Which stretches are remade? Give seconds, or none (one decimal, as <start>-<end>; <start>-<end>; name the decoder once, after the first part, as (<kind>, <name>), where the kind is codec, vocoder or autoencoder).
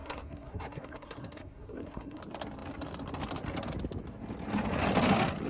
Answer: 0.0-2.2 (codec, SNAC)